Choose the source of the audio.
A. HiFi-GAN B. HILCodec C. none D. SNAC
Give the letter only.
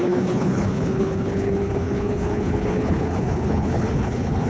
B